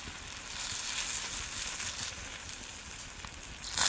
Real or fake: real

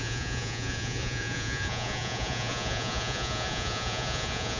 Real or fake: fake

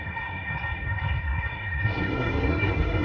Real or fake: fake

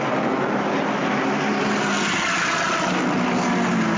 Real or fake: real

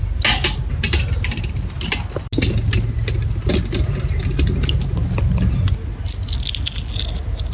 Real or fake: real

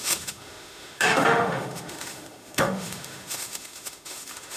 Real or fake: fake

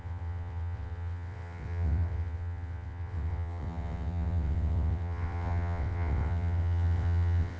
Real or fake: fake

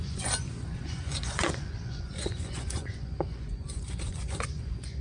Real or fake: fake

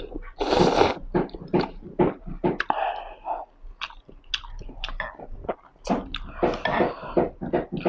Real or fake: real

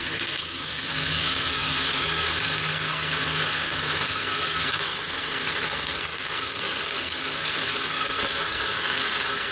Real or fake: fake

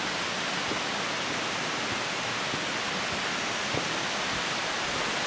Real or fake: real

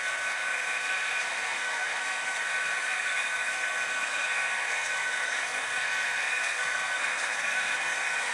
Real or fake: fake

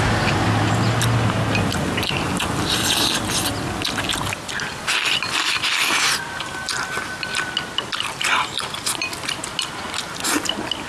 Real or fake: real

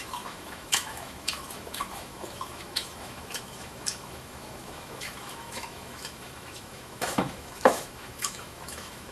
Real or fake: fake